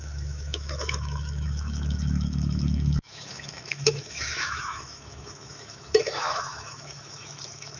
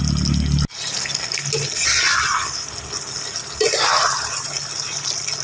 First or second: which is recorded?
second